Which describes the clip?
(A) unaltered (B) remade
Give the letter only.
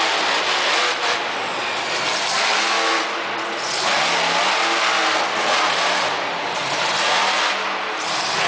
A